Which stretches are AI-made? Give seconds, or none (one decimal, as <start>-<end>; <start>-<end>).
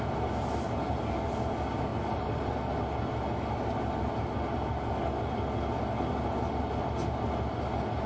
none